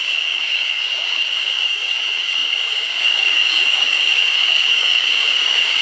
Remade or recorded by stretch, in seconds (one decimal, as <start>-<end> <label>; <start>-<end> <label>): 0.0-5.8 remade